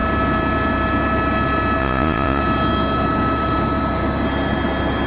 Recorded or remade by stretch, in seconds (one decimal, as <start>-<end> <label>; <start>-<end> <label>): 0.0-1.8 recorded; 1.8-2.4 remade; 2.4-5.1 recorded